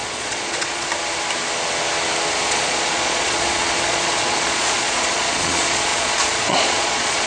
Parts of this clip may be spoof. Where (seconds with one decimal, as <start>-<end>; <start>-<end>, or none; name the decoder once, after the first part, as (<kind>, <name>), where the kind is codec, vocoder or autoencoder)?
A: 0.0-0.9 (vocoder, Vocos); 2.5-7.3